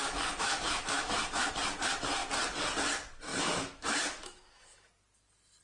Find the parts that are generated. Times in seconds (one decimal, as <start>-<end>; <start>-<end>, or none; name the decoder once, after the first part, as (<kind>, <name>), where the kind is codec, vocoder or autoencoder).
0.0-1.5 (autoencoder, DAC-VAE); 3.3-4.9